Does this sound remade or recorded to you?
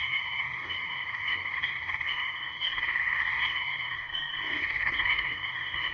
remade